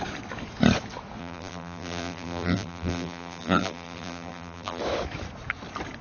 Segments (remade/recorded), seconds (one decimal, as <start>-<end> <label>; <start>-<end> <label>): 0.0-1.2 recorded; 1.2-4.8 remade; 4.8-6.0 recorded